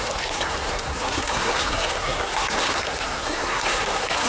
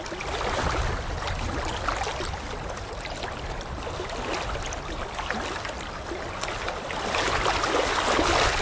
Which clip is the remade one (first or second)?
first